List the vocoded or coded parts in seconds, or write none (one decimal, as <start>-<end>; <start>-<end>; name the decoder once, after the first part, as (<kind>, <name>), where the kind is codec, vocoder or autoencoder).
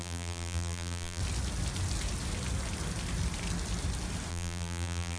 0.0-1.2 (vocoder, BigVGAN v2); 4.3-5.2